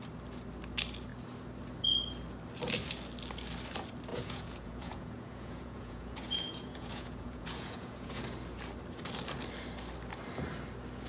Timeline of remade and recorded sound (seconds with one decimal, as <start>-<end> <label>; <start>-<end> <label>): 0.0-4.1 recorded; 4.1-8.2 remade; 8.2-11.1 recorded